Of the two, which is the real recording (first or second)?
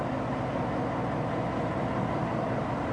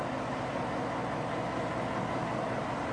second